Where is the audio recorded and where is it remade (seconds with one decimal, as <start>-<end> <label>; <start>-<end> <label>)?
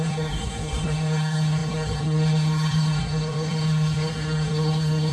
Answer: 0.0-5.1 remade